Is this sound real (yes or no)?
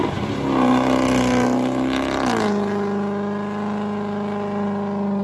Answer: yes